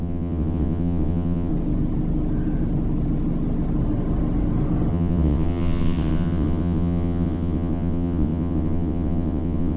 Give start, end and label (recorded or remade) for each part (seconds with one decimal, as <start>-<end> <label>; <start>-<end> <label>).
0.0-1.5 remade; 1.5-4.9 recorded; 4.9-9.8 remade